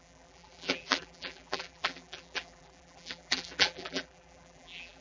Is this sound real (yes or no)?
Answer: no